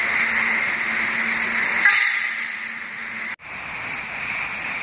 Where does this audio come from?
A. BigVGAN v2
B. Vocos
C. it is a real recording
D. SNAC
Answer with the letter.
C